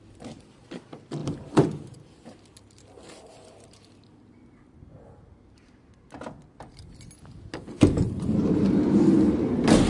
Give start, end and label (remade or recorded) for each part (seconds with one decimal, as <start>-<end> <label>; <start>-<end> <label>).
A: 0.0-1.2 recorded; 1.2-2.4 remade; 2.4-9.9 recorded